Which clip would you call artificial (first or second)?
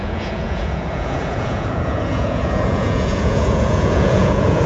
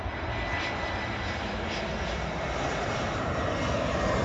first